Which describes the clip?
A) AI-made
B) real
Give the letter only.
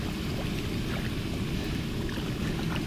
B